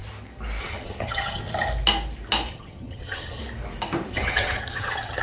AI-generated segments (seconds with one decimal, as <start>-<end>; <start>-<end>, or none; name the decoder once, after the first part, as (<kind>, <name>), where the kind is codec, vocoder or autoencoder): 0.6-1.4 (vocoder, HiFi-GAN); 2.5-3.4; 4.1-5.2